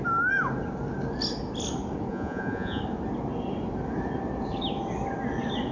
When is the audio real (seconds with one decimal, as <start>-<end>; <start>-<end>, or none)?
0.0-2.1; 2.8-5.7